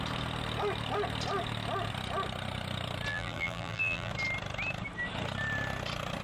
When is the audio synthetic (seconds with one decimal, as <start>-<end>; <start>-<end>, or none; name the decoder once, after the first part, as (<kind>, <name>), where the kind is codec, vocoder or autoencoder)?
3.1-4.1 (vocoder, BigVGAN v2)